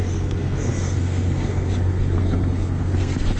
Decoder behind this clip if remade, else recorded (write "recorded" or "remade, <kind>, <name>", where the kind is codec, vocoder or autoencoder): remade, codec, SNAC